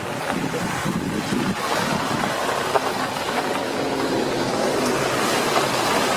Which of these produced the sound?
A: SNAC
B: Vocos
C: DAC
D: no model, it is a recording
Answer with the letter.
D